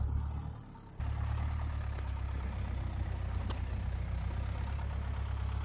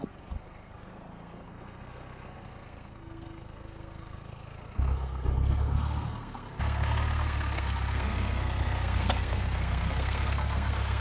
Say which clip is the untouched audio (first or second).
first